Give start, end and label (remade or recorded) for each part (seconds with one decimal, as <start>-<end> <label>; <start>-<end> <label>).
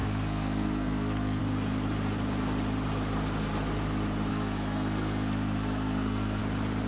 0.0-1.4 remade; 1.4-4.3 recorded; 4.3-6.4 remade; 6.4-6.9 recorded